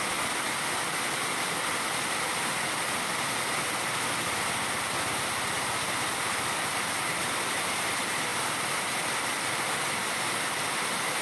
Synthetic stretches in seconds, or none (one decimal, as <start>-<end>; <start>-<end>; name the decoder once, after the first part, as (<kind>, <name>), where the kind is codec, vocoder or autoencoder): none